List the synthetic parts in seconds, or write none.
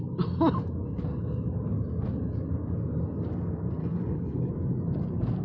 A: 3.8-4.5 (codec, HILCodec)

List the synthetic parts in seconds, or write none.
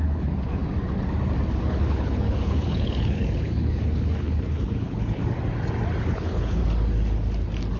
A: 0.0-0.6 (codec, HILCodec); 1.6-5.2; 6.1-6.6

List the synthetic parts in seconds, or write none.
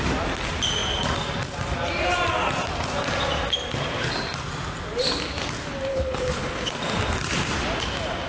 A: 5.9-6.7 (codec, HILCodec)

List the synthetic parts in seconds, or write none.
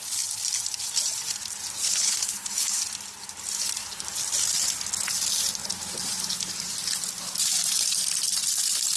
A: 1.8-2.8 (codec, HILCodec)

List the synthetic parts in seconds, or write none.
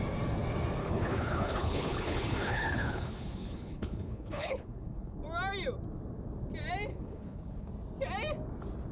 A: 0.8-5.2 (codec, HILCodec); 6.9-7.7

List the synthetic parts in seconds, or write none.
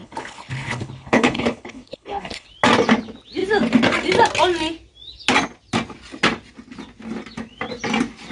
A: 0.0-2.5 (codec, HILCodec)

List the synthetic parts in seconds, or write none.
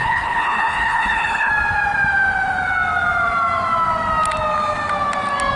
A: 0.0-1.5 (codec, HILCodec)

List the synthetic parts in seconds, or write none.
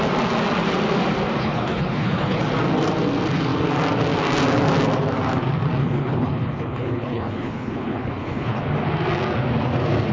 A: 1.4-2.4 (codec, HILCodec); 5.8-8.6